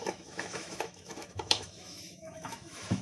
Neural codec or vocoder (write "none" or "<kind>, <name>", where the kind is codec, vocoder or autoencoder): autoencoder, DAC-VAE